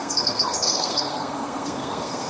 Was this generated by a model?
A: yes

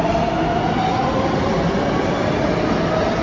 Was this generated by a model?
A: no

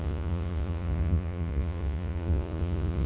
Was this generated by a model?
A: yes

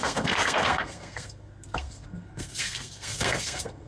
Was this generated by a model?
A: yes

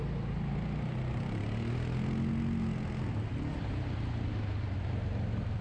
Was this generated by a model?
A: no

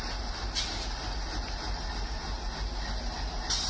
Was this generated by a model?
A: no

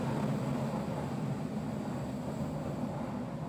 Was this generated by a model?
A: no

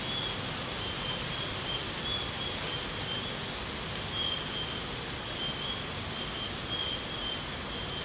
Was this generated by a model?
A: no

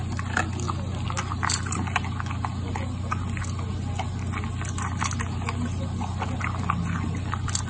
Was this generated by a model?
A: no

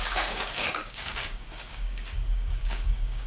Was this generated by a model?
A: yes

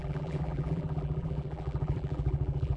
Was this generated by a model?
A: yes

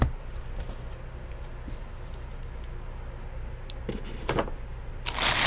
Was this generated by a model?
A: no